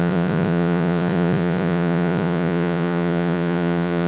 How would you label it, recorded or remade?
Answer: remade